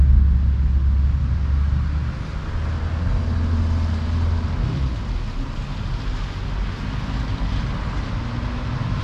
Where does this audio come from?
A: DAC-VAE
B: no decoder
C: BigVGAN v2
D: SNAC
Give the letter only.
B